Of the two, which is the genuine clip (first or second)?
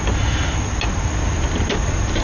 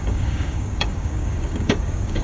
first